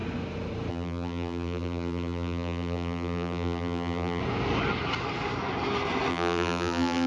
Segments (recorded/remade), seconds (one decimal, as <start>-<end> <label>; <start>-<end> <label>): 0.0-0.7 recorded; 0.7-4.2 remade; 4.2-6.1 recorded; 6.1-7.1 remade